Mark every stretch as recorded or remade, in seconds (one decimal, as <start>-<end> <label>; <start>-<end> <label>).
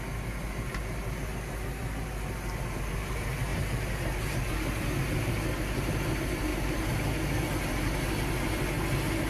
0.0-1.8 recorded; 1.8-2.3 remade; 2.3-3.5 recorded; 3.5-4.5 remade; 4.5-9.3 recorded